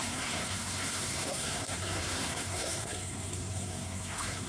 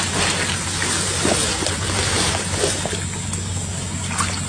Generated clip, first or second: first